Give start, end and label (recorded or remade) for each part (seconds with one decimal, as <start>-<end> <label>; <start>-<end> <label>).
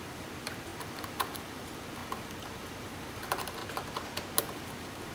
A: 0.0-3.6 remade; 3.6-4.4 recorded; 4.4-5.1 remade